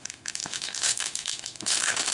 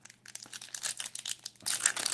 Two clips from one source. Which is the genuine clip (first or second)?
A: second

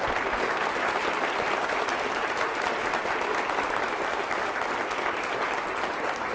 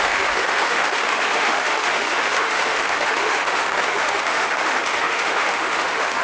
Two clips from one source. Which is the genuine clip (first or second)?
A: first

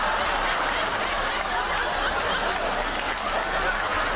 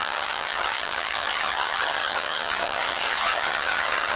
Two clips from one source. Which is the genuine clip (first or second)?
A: first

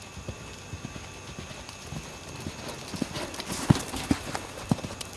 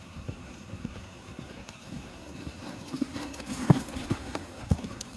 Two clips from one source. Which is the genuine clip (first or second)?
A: first